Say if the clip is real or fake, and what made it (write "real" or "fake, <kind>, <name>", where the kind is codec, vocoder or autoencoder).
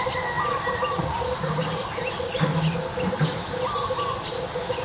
real